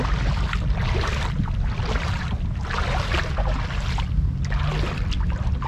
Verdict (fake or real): real